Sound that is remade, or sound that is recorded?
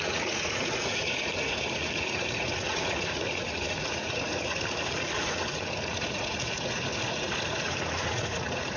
remade